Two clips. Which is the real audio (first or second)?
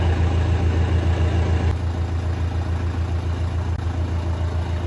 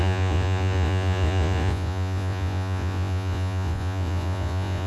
first